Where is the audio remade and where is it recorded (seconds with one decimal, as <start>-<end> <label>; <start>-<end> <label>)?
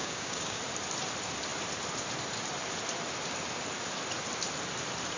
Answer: 0.0-0.6 remade; 0.6-5.2 recorded